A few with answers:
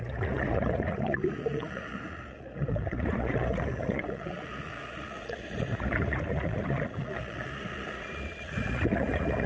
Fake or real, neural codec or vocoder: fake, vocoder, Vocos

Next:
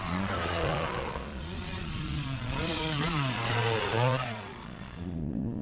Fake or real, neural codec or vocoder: fake, vocoder, Vocos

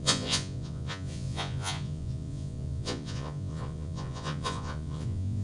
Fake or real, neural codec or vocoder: fake, vocoder, Vocos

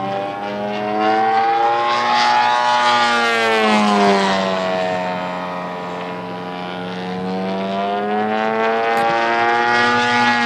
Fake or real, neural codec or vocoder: real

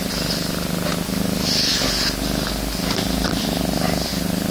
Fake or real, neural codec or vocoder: real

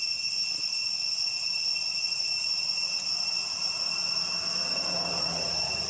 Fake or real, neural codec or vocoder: real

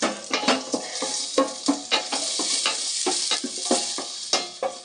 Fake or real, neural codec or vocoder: real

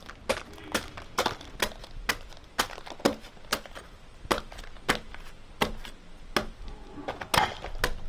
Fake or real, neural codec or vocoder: real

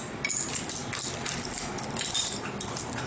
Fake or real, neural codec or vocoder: real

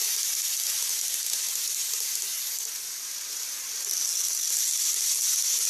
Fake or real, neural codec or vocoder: real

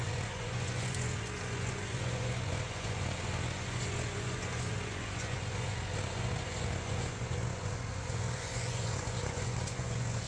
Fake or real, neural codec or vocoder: fake, vocoder, Vocos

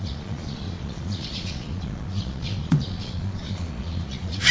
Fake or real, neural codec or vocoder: fake, vocoder, Vocos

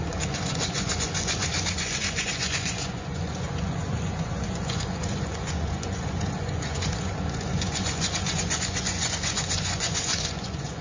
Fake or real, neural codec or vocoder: fake, vocoder, Vocos